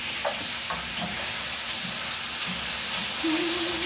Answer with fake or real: real